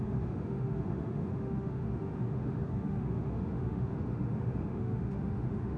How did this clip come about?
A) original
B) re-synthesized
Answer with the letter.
B